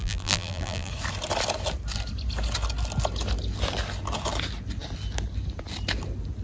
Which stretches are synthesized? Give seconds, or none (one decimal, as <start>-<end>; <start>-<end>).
0.0-0.9